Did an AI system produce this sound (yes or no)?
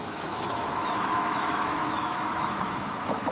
yes